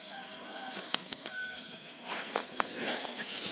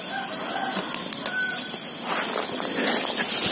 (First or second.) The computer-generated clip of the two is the first